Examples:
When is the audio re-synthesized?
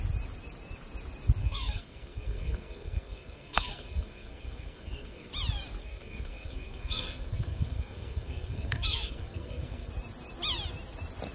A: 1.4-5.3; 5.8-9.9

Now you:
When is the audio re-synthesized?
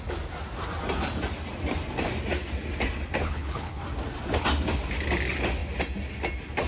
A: 3.2-3.8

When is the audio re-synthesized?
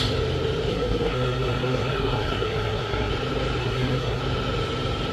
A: 0.7-3.1; 3.6-4.2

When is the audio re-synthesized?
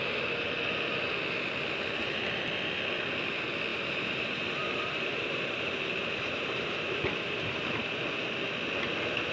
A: 3.7-8.0